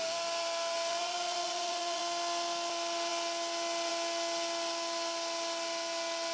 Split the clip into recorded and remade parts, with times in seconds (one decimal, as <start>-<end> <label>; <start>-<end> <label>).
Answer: 0.0-0.9 recorded; 0.9-2.0 remade; 2.0-6.3 recorded